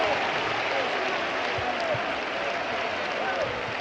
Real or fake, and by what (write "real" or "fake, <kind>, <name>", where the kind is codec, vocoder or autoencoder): real